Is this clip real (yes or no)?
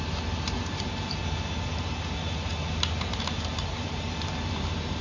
yes